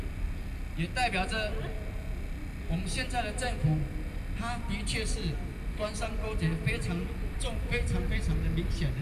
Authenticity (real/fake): real